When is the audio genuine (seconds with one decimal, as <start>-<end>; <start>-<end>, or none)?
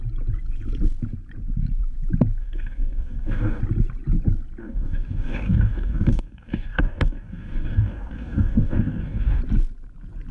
0.0-2.4; 3.6-4.6; 9.4-10.3